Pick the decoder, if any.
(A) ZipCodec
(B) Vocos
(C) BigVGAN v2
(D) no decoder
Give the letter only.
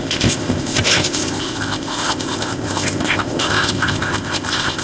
A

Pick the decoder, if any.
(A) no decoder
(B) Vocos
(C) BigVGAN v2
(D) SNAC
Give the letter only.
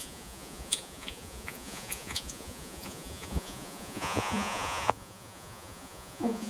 B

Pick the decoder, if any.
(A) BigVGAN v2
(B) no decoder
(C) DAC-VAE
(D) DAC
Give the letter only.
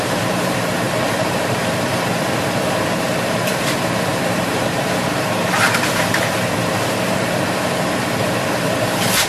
A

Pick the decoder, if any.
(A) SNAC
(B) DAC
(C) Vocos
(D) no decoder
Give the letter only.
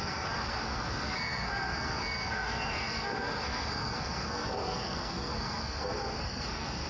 A